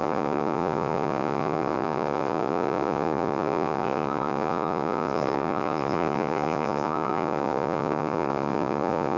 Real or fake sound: fake